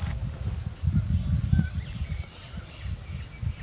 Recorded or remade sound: recorded